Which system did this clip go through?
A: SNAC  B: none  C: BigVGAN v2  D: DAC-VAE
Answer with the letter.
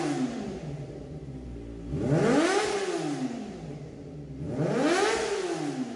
B